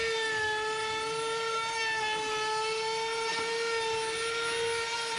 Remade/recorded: recorded